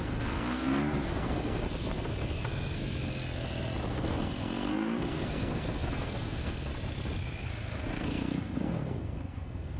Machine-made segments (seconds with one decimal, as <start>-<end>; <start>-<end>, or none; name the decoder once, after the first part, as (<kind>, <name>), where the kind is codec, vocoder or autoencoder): 0.0-2.8 (codec, SNAC); 3.9-6.7; 7.4-9.8